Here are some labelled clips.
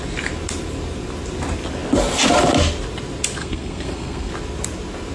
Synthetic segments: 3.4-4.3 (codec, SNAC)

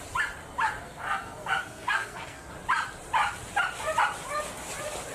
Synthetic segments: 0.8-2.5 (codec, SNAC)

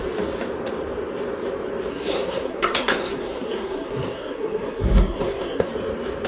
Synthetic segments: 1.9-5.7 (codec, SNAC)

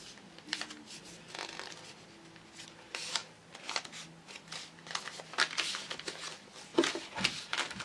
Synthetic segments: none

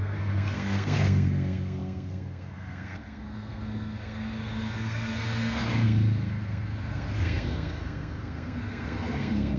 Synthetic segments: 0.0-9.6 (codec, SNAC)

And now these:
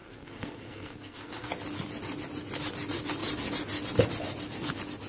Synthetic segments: 0.0-1.5 (codec, SNAC)